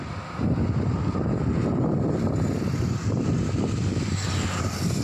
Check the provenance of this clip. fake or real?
real